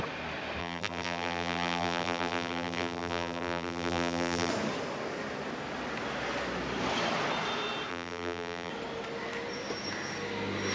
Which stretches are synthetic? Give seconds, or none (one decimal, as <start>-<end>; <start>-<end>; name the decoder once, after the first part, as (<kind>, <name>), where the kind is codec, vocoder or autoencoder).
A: 0.6-4.5 (vocoder, BigVGAN v2); 7.9-8.7